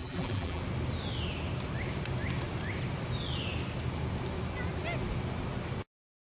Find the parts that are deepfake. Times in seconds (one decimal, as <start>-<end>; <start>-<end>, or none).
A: 0.0-0.6